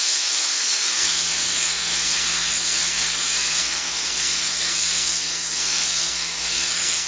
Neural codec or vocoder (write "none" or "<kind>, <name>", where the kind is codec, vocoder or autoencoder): codec, SNAC